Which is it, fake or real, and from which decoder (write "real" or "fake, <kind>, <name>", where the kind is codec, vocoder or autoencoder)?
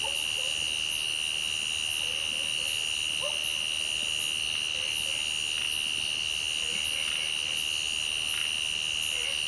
real